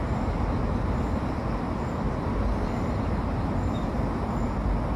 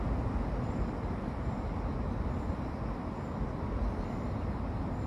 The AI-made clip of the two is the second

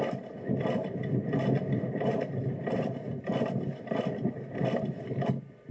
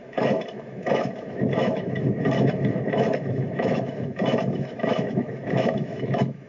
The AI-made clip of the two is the second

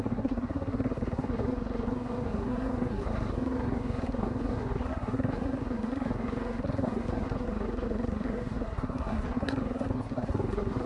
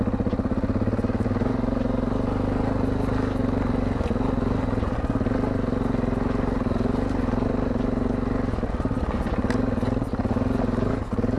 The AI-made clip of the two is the first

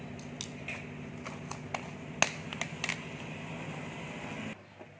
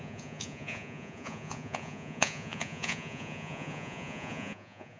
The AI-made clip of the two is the second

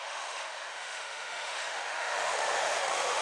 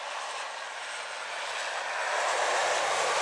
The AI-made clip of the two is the first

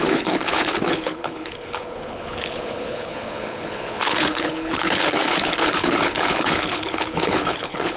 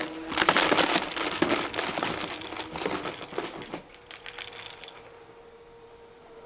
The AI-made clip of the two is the first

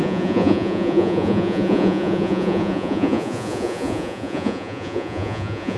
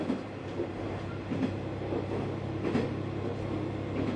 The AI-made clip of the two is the first